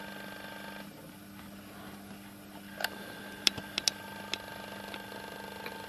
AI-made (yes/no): no